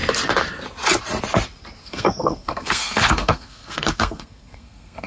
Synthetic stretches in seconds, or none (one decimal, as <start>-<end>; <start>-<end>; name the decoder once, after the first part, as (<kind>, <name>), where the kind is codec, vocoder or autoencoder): 1.8-5.1 (codec, SNAC)